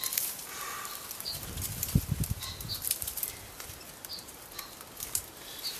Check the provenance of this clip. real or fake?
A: real